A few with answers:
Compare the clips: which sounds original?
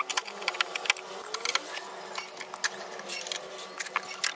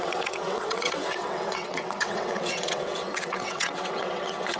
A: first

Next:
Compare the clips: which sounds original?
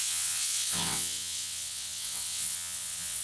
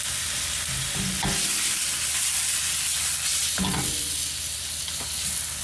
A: second